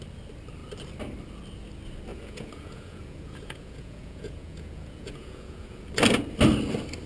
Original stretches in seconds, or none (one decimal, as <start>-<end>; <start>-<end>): 0.0-2.1; 5.9-7.1